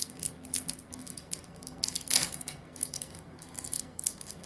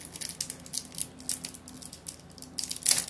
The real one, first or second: second